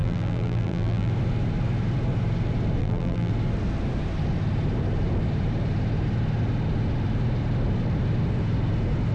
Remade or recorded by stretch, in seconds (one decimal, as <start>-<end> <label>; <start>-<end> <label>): 0.0-1.1 remade; 1.1-2.8 recorded; 2.8-3.3 remade; 3.3-9.1 recorded